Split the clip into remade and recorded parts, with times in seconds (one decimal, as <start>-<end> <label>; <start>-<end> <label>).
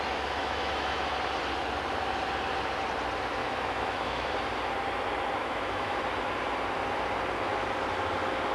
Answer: 0.0-0.4 recorded; 0.4-1.1 remade; 1.1-3.4 recorded; 3.4-4.3 remade; 4.3-5.4 recorded; 5.4-6.0 remade; 6.0-8.5 recorded